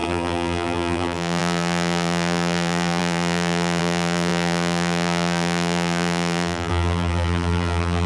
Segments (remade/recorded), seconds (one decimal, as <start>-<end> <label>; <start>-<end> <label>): 0.0-8.1 remade